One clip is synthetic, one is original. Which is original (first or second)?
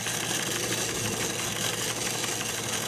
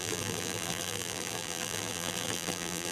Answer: first